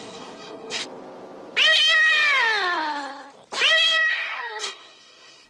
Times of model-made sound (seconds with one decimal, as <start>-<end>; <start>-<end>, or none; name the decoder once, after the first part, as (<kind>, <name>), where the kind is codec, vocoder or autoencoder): 0.0-0.8 (codec, SNAC); 4.1-5.5